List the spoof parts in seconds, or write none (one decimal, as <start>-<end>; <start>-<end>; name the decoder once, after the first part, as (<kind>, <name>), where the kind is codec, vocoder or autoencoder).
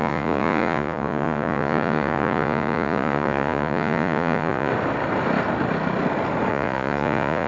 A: 0.0-4.7 (vocoder, Vocos); 6.5-7.5